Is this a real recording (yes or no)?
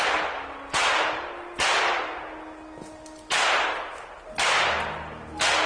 yes